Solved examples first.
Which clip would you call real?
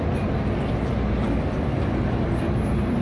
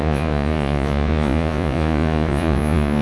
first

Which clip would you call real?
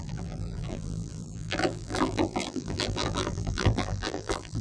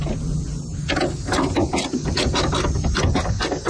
second